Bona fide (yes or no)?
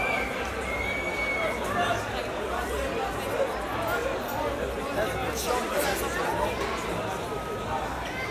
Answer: yes